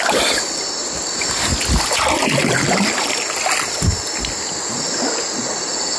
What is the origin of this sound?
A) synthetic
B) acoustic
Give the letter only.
B